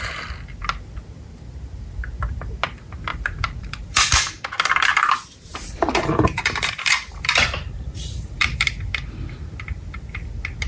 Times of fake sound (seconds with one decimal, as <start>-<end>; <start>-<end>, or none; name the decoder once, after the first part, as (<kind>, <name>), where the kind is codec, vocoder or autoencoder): 3.1-4.3 (vocoder, BigVGAN v2); 5.5-8.7